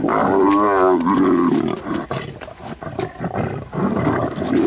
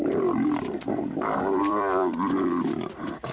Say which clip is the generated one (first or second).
second